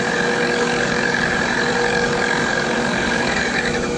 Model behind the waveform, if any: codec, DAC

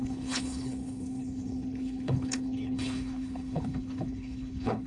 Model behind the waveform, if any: codec, HILCodec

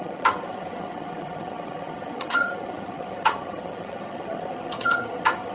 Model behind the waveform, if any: vocoder, HiFi-GAN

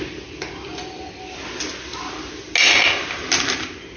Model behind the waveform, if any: none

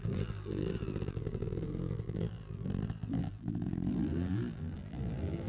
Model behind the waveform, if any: vocoder, BigVGAN v2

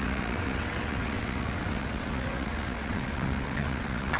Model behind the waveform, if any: vocoder, WaveNeXt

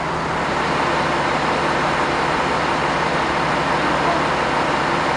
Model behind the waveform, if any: none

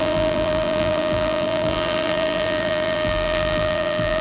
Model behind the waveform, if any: vocoder, BigVGAN v2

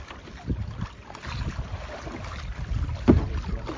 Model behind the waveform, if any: none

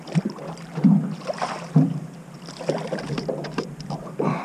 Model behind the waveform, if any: none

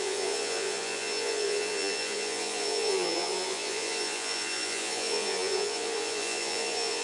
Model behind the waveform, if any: vocoder, Vocos